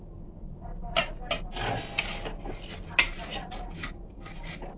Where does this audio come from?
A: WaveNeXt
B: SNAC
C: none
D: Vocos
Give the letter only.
C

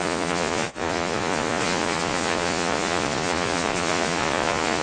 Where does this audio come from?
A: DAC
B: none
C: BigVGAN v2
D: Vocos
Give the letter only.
D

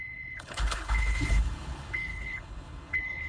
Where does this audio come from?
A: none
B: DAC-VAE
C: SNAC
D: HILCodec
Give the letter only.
D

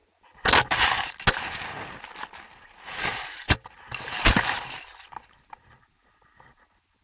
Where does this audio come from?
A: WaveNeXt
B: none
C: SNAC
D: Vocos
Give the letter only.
B